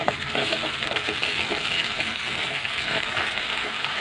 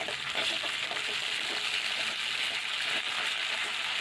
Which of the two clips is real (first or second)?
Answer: second